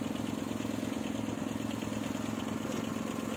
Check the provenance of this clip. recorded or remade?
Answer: recorded